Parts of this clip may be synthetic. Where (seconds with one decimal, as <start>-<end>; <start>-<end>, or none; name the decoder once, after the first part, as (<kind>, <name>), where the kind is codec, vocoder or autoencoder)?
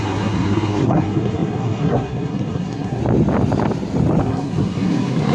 0.0-3.0 (codec, SNAC); 4.2-5.3